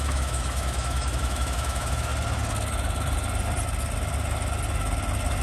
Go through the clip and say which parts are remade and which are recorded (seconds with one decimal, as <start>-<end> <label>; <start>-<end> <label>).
0.0-2.1 remade; 2.1-5.4 recorded